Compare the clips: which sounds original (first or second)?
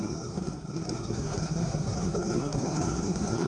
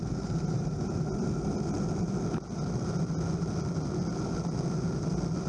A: second